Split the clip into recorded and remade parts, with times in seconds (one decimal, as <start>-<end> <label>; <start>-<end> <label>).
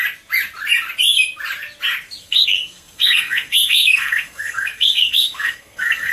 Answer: 0.0-2.2 recorded; 2.2-6.1 remade